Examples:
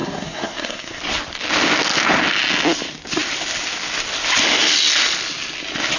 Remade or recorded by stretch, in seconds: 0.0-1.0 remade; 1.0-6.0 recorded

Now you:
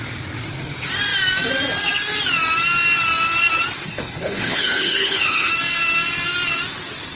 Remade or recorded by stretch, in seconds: 0.0-3.8 recorded; 3.8-5.5 remade; 5.5-7.2 recorded

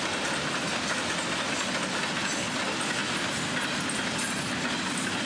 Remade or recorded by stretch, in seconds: 0.0-5.3 recorded

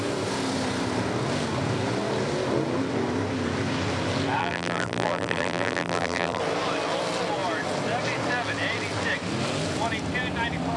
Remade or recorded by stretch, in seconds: 0.0-4.4 recorded; 4.4-6.4 remade; 6.4-10.8 recorded

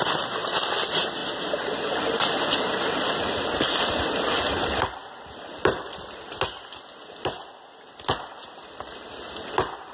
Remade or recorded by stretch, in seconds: 0.0-9.9 recorded

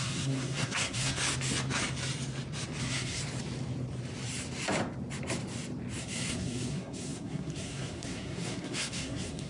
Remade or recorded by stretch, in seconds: 0.0-1.2 remade; 1.2-2.8 recorded; 2.8-3.2 remade; 3.2-6.0 recorded; 6.0-9.5 remade

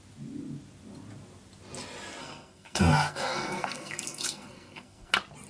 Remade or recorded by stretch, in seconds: 0.0-2.2 recorded; 2.2-5.1 remade; 5.1-5.5 recorded